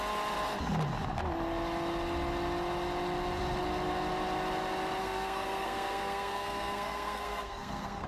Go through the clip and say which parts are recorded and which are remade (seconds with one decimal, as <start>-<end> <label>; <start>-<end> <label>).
0.0-5.0 recorded; 5.0-8.1 remade